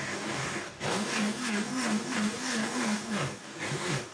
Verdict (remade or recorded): remade